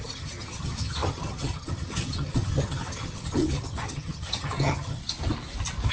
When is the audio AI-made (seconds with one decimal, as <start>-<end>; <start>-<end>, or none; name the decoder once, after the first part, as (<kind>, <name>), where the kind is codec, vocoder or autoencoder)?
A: 0.0-5.0 (vocoder, HiFi-GAN)